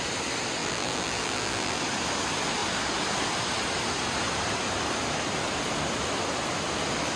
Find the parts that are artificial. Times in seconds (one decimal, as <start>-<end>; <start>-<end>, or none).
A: 0.6-1.8